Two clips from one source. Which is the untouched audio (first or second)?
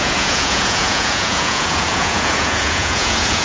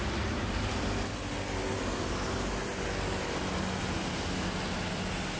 second